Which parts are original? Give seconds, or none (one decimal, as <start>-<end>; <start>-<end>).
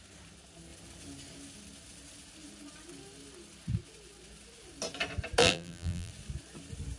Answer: 0.0-5.4; 6.1-7.0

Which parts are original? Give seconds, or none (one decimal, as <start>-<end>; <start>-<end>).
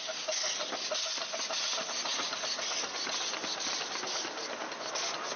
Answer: 0.0-5.4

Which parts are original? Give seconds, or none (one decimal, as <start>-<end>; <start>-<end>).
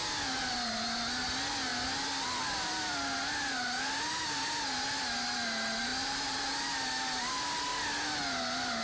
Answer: 0.5-1.7; 3.5-5.9; 6.8-8.8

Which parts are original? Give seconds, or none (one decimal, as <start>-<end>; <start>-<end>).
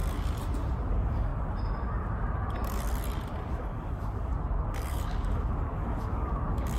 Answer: 0.0-0.9; 1.3-3.5; 4.3-4.9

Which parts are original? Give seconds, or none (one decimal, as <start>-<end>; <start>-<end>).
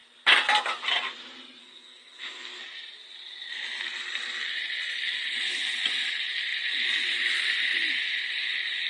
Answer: 0.0-1.6; 2.6-8.9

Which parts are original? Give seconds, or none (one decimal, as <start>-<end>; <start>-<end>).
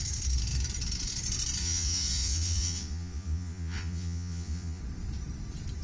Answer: 0.0-1.6; 4.8-5.8